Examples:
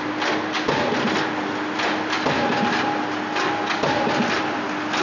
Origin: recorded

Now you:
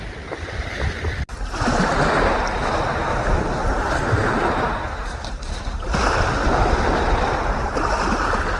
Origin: recorded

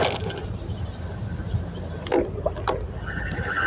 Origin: recorded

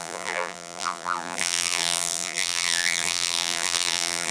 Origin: remade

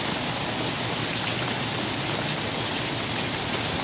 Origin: recorded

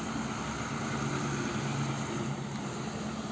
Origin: recorded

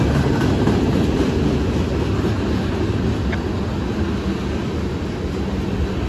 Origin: recorded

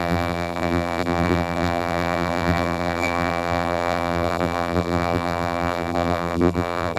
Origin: remade